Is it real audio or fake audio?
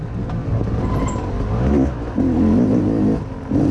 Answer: real